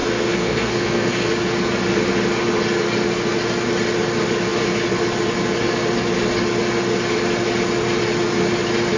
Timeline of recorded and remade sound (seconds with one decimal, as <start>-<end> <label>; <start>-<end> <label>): 0.0-1.3 remade; 1.3-9.0 recorded